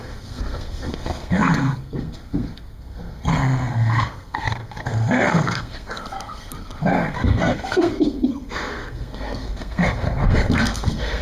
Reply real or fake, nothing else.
fake